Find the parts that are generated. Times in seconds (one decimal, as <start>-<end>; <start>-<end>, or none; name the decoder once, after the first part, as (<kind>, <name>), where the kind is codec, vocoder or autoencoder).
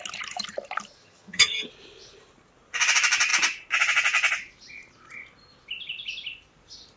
1.0-1.7 (vocoder, HiFi-GAN)